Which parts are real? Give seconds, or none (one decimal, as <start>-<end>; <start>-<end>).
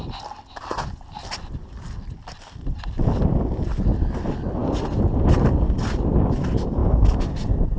0.0-7.8